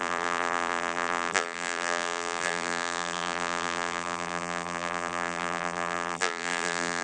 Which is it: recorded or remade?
remade